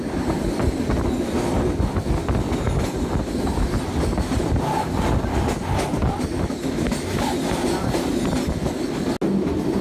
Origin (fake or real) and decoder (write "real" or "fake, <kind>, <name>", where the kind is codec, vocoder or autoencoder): real